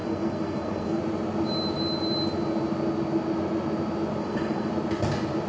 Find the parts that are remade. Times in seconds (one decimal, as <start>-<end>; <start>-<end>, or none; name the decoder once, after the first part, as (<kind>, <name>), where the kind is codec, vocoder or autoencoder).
0.0-1.0 (codec, SNAC); 4.2-4.7